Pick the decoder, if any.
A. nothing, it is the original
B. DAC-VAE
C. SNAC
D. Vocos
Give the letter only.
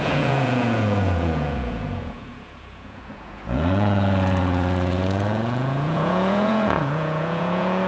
D